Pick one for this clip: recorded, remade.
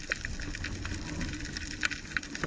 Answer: recorded